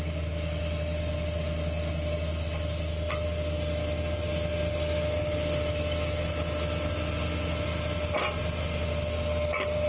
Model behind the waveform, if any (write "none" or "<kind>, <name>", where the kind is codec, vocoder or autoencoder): none